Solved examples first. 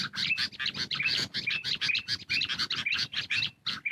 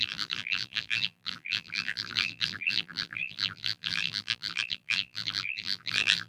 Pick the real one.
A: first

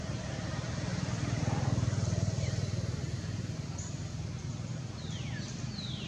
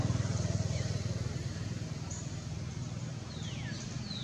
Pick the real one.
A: second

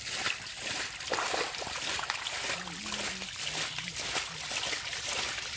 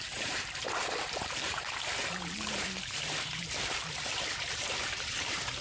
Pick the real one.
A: first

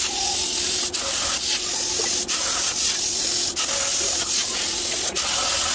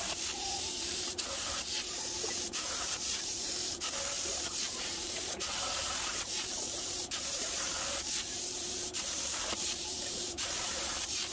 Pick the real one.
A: first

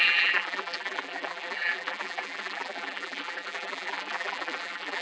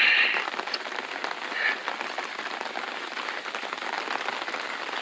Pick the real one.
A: second